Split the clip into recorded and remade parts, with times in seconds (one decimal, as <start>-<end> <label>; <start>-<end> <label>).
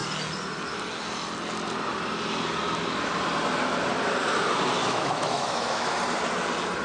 0.0-4.8 recorded; 4.8-6.0 remade; 6.0-6.8 recorded